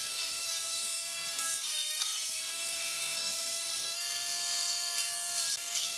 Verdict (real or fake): fake